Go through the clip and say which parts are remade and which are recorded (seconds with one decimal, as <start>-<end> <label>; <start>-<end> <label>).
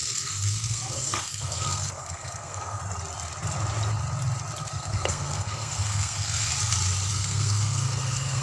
0.0-2.8 remade; 2.8-4.6 recorded; 4.6-6.5 remade; 6.5-7.1 recorded; 7.1-8.4 remade